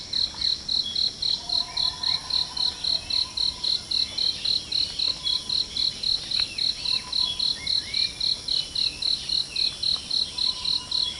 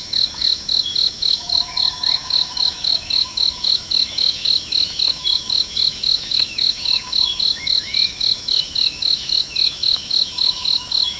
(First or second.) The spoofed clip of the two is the second